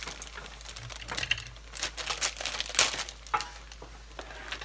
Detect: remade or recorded recorded